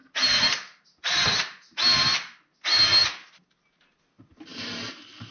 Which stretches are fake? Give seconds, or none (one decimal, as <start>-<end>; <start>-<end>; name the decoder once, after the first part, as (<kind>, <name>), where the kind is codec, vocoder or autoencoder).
none